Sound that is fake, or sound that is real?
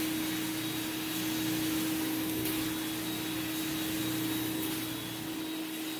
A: real